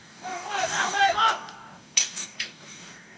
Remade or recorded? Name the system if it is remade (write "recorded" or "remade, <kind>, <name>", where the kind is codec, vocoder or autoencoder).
remade, codec, DAC